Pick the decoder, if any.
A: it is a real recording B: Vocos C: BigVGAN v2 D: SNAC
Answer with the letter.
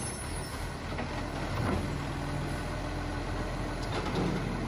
A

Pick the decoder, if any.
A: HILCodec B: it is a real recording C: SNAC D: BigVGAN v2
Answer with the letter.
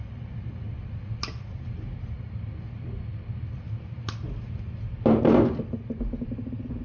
B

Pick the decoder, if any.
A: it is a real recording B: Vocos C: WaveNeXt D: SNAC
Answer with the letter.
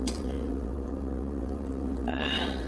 C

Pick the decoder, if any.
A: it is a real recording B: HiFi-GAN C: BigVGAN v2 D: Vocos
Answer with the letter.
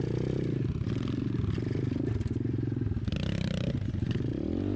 A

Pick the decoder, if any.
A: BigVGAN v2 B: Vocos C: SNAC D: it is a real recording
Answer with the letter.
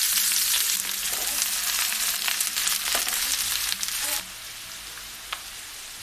D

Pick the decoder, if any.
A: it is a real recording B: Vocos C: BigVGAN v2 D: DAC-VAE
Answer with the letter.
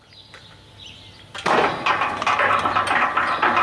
A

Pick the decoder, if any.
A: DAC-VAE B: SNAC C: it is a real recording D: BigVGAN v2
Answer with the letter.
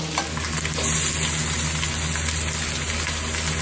C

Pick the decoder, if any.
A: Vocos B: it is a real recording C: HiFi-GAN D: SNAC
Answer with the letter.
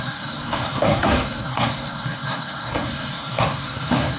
D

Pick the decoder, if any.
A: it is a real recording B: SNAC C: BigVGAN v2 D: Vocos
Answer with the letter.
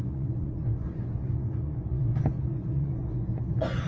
D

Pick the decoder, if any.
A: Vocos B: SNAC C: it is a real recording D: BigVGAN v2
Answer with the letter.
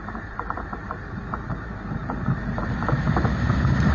D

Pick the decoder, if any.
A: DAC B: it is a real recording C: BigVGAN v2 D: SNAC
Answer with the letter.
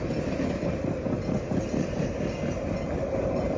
B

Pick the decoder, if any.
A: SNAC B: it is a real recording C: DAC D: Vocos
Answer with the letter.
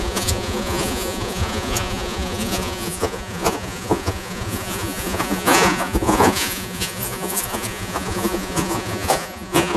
D